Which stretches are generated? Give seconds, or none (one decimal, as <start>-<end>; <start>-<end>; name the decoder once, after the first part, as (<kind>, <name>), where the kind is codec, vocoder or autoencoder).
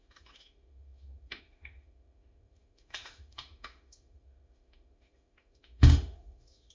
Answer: 0.0-6.7 (autoencoder, DAC-VAE)